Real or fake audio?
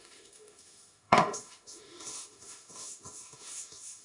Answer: fake